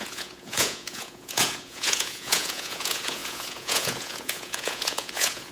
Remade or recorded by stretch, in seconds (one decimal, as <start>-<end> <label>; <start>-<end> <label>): 0.0-5.5 remade